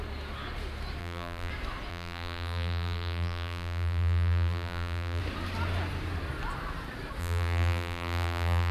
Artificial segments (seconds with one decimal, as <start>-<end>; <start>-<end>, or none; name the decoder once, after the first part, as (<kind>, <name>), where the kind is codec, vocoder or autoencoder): 1.0-1.5 (vocoder, BigVGAN v2); 1.9-5.2; 7.2-8.7

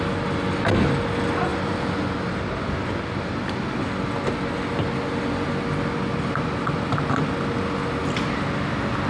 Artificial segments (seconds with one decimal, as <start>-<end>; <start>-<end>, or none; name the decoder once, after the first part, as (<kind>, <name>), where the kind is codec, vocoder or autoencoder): none